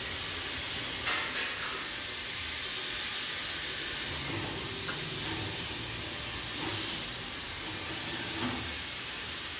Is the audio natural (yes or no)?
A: yes